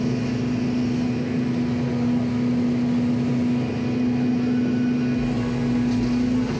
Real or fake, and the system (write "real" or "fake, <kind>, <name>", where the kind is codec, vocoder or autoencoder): real